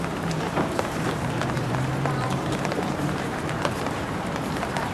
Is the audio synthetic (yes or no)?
yes